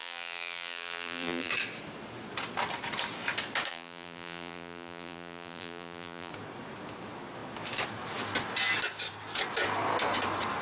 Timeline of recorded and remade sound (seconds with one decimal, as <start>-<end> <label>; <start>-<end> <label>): 0.0-1.5 remade; 1.5-3.7 recorded; 3.7-6.3 remade; 6.3-10.6 recorded